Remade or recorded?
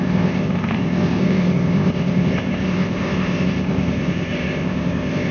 remade